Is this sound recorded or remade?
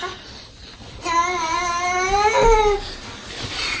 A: recorded